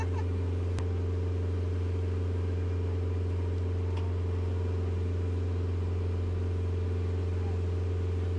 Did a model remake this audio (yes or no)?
no